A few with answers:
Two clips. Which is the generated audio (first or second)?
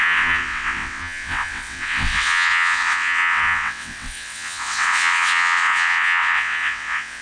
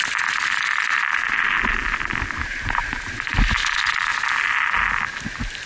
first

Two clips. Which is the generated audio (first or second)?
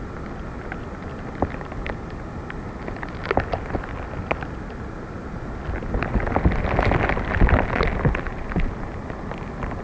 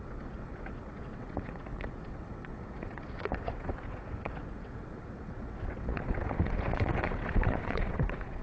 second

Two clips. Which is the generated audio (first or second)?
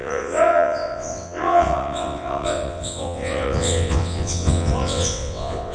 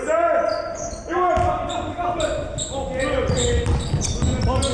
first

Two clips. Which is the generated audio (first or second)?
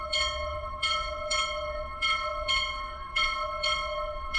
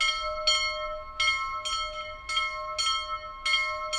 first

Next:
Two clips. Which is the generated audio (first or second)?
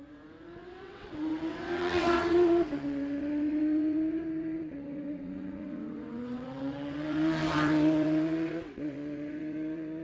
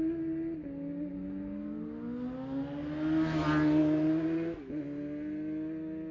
first